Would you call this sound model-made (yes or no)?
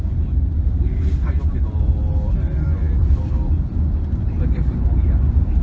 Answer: no